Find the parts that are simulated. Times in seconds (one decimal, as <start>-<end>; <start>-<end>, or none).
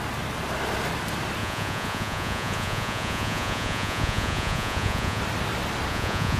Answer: 1.4-5.2; 5.9-6.4